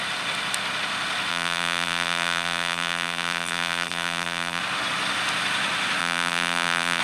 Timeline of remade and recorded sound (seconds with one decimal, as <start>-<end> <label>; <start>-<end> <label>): 0.0-1.3 recorded; 1.3-4.6 remade; 4.6-6.0 recorded; 6.0-7.0 remade